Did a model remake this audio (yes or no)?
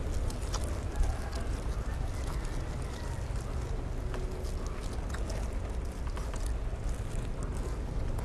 no